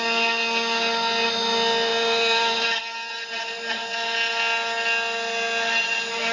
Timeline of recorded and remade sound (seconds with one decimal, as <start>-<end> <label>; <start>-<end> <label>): 0.0-1.9 recorded; 1.9-3.3 remade; 3.3-6.3 recorded